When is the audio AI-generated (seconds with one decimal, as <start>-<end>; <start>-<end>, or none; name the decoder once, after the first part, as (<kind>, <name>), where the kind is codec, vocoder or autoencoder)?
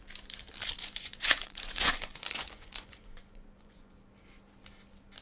0.8-3.9 (vocoder, Vocos)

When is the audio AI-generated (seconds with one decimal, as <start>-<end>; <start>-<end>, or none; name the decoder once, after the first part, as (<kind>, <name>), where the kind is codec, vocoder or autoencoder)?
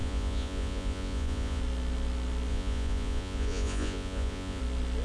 0.0-1.6 (vocoder, Vocos); 2.5-4.6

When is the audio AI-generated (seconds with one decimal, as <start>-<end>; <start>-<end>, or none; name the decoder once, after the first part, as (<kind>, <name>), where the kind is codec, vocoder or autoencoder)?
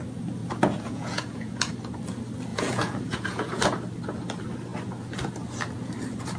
0.4-1.7 (vocoder, Vocos); 2.5-3.6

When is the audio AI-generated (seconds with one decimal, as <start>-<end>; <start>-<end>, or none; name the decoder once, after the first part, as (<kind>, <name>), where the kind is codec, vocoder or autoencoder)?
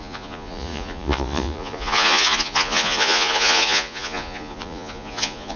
0.0-5.6 (vocoder, Vocos)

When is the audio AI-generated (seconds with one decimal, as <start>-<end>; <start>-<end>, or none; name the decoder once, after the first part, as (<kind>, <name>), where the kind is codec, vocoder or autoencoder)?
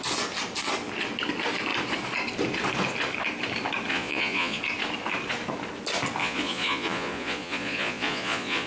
3.9-4.6 (vocoder, Vocos); 6.2-8.7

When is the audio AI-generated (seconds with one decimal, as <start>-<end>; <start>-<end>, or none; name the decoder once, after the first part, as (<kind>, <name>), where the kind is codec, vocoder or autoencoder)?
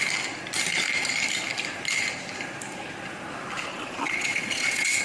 3.7-5.0 (vocoder, Vocos)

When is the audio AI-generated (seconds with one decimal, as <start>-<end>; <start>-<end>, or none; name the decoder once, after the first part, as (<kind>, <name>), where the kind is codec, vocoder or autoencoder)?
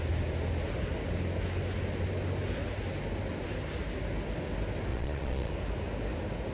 4.9-5.5 (vocoder, Vocos)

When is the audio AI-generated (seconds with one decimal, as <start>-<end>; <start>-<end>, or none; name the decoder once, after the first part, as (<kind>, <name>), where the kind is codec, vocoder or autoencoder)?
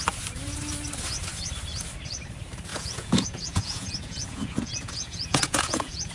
2.7-6.1 (vocoder, Vocos)